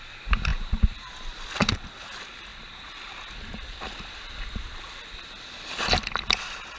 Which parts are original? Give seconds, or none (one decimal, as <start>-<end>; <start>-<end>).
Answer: 0.0-6.8